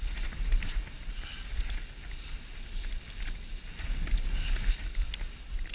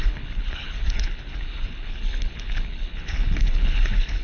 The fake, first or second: second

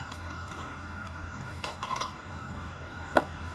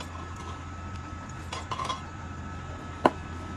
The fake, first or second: first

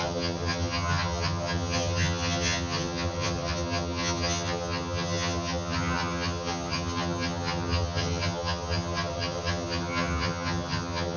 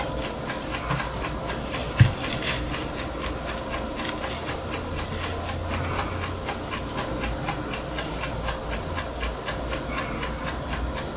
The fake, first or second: first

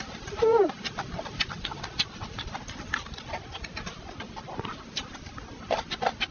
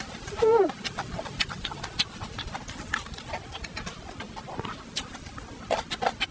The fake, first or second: first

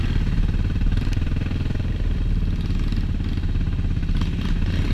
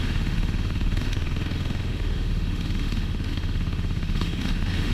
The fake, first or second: second